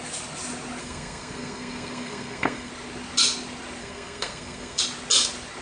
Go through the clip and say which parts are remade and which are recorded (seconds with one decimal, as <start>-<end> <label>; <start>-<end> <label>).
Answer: 0.0-0.8 recorded; 0.8-2.7 remade; 2.7-3.8 recorded; 3.8-4.8 remade; 4.8-5.6 recorded